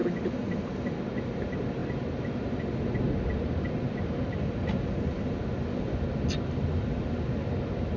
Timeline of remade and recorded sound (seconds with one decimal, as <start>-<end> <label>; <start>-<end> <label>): 0.0-8.0 recorded